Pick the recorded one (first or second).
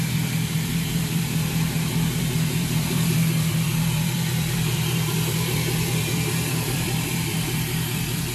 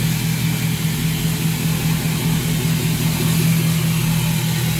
second